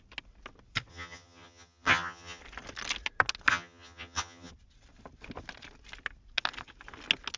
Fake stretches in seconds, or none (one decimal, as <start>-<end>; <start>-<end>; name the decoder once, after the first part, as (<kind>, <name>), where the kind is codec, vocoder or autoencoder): 0.9-2.4 (vocoder, HiFi-GAN); 3.5-4.5